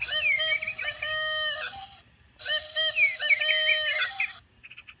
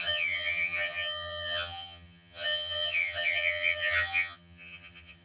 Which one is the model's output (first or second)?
second